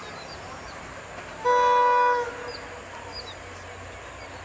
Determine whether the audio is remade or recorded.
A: recorded